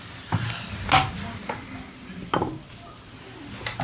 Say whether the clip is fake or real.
real